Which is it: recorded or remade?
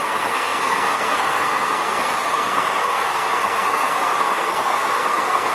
remade